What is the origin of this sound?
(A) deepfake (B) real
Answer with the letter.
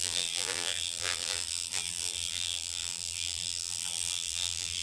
A